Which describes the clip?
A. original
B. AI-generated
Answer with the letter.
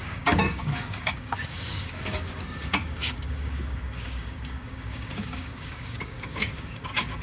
B